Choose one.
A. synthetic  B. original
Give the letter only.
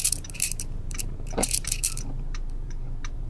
A